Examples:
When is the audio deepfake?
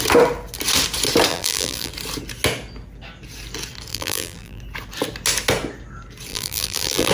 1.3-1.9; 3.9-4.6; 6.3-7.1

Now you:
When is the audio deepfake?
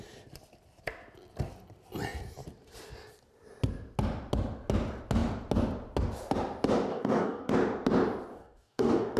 6.9-7.5; 8.3-9.2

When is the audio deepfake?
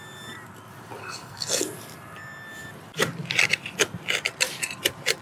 1.0-1.6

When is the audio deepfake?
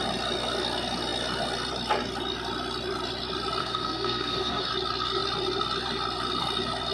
3.6-4.7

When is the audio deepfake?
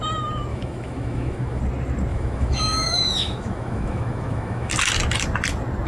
0.5-1.6; 2.1-4.7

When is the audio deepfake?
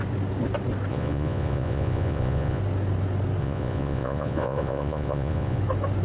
0.9-2.6; 3.4-5.6